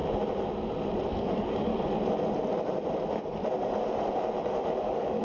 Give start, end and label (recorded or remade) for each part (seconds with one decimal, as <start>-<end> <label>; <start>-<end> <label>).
0.0-1.1 recorded; 1.1-1.7 remade; 1.7-4.8 recorded; 4.8-5.2 remade